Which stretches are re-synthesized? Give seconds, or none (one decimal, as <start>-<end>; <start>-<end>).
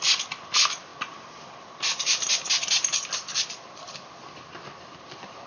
none